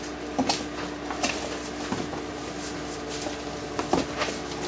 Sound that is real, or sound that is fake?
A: real